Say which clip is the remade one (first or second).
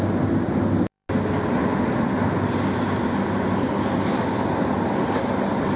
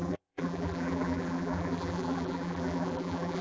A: second